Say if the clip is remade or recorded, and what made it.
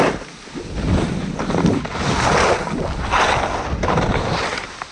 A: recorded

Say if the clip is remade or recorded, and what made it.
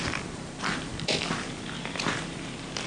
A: remade, vocoder, BigVGAN v2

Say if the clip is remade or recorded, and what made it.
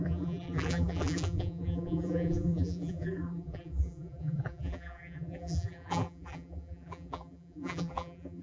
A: remade, vocoder, BigVGAN v2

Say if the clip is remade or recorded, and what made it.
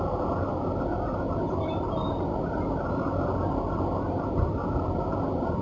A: recorded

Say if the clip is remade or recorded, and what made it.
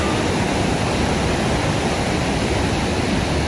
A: remade, vocoder, BigVGAN v2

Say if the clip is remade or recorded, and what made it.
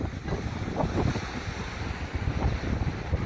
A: remade, vocoder, BigVGAN v2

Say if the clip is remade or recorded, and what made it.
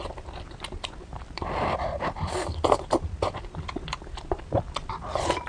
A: remade, vocoder, BigVGAN v2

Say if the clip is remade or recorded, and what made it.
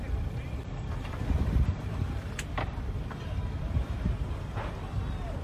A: remade, vocoder, BigVGAN v2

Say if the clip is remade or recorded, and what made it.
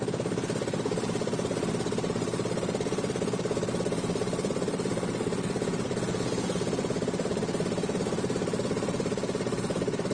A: remade, vocoder, BigVGAN v2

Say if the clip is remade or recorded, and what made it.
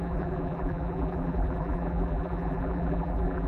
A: remade, vocoder, BigVGAN v2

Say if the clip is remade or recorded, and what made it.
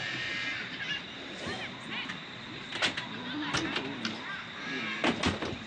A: recorded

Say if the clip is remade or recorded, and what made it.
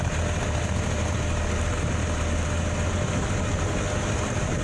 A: recorded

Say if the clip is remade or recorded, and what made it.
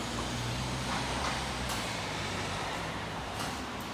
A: remade, vocoder, BigVGAN v2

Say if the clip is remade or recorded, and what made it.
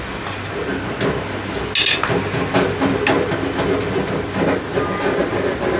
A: recorded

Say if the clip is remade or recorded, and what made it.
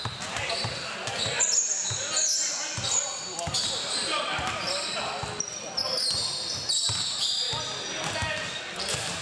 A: recorded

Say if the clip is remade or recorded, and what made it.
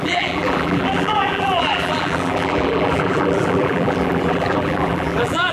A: remade, vocoder, BigVGAN v2